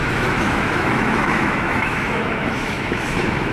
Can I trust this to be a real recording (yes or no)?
no